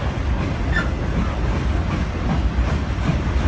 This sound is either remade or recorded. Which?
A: recorded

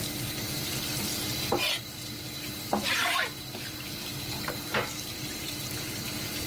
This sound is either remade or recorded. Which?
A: remade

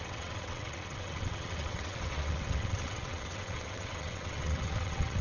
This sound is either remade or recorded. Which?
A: remade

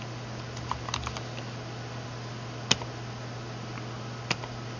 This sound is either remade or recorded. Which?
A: recorded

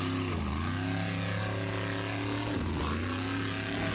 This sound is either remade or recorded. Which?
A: recorded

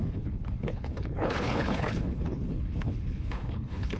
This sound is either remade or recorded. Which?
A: remade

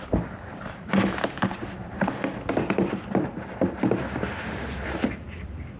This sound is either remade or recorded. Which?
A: recorded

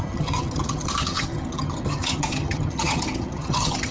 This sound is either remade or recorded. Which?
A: remade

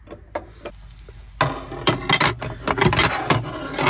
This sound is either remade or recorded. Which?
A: recorded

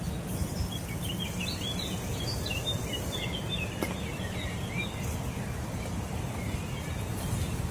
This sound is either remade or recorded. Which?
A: recorded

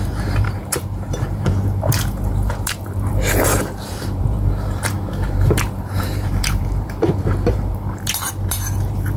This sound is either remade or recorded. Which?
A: remade